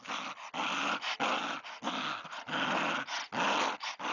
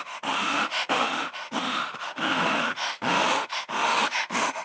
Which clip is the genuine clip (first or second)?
first